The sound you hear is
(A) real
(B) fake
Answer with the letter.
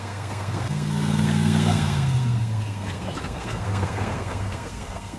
B